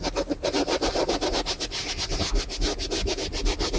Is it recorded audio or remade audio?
recorded